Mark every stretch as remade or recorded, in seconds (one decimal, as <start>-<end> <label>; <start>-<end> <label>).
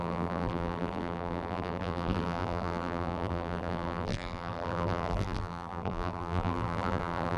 0.0-7.4 remade